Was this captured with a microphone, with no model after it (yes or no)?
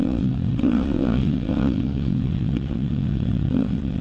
no